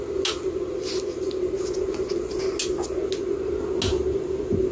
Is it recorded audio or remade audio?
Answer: recorded